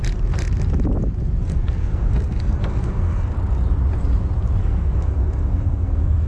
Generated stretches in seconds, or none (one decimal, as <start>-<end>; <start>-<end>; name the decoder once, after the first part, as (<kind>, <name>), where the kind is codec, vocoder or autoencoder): 1.4-3.3 (codec, SNAC); 4.6-6.3